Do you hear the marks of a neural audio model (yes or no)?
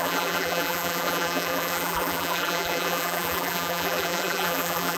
yes